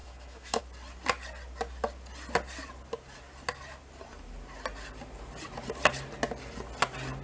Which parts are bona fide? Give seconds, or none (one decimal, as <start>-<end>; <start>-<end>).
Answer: 0.6-7.2